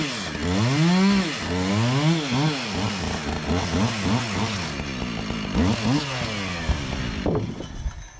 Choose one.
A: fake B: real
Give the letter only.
B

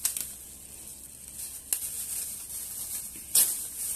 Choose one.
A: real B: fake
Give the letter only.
A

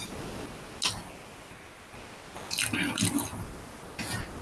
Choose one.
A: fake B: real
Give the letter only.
B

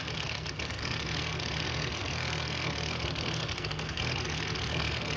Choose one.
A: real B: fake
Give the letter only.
B